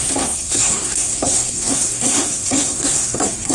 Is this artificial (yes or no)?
yes